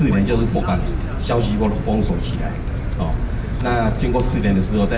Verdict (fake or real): real